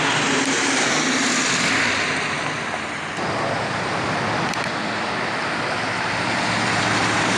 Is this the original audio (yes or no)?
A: no